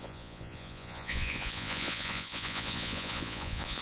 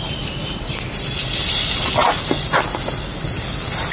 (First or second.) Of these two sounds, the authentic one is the second